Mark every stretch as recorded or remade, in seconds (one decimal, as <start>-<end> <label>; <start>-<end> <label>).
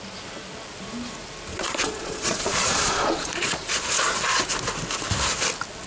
0.0-1.5 recorded; 1.5-4.2 remade; 4.2-5.9 recorded